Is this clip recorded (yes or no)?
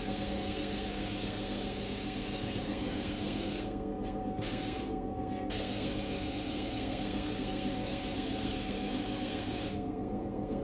no